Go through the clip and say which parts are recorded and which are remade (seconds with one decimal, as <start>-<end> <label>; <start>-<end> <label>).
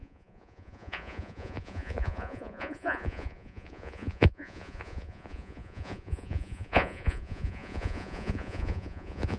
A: 0.0-9.4 remade